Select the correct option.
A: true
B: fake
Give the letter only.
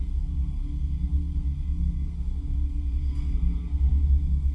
B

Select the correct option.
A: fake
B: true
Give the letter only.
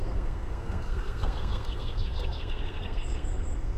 A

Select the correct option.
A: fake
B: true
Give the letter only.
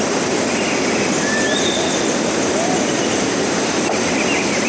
B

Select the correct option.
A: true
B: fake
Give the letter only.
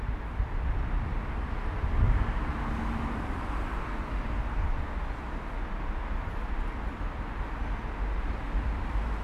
A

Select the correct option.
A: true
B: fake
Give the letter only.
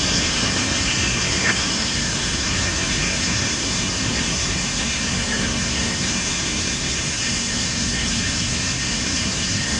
B